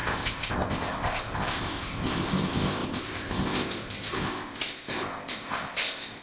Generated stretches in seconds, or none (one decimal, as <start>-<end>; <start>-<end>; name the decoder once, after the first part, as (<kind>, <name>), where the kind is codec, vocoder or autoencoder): 0.0-6.2 (codec, ZipCodec)

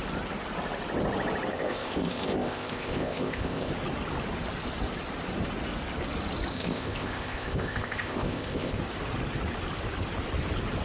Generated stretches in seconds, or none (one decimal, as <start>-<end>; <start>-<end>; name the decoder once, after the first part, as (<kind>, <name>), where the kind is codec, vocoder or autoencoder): 1.5-3.7 (codec, ZipCodec); 6.5-8.8

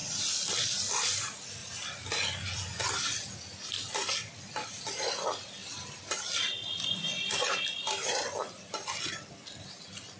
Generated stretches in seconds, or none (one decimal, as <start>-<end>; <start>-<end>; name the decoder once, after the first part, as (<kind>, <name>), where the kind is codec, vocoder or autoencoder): none

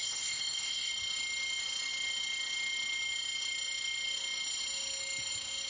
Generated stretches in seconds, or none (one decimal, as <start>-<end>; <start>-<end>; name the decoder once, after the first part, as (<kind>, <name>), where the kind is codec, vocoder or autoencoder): 0.0-0.9 (codec, ZipCodec)

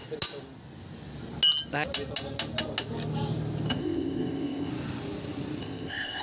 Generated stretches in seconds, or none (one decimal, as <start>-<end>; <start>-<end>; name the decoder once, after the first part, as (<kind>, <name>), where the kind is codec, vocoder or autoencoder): 3.7-4.7 (codec, ZipCodec); 5.6-6.2